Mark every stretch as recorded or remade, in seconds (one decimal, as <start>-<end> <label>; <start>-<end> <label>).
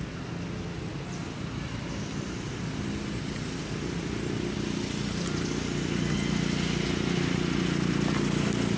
0.0-1.2 recorded; 1.2-2.1 remade; 2.1-8.8 recorded